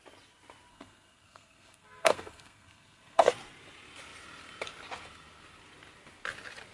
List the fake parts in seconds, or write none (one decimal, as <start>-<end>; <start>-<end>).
0.7-3.3